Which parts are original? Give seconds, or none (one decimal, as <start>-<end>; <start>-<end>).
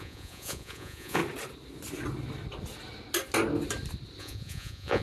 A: 1.2-4.2